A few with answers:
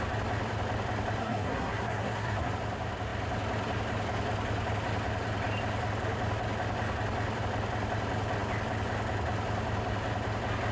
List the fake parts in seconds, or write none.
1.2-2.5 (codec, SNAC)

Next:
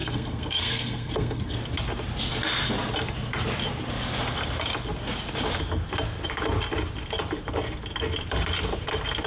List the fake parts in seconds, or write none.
0.0-1.6 (codec, SNAC)

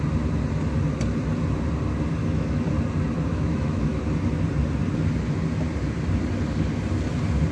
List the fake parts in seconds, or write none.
2.2-2.7 (autoencoder, DAC-VAE); 3.3-4.0

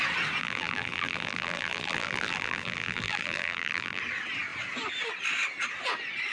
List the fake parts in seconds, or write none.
0.4-4.0 (vocoder, BigVGAN v2)

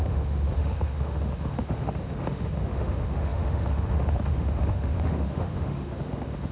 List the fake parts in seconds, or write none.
0.0-6.5 (autoencoder, DAC-VAE)